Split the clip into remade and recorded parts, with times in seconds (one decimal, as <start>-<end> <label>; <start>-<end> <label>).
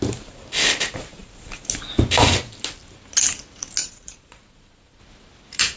0.0-3.8 recorded; 3.8-5.0 remade; 5.0-5.8 recorded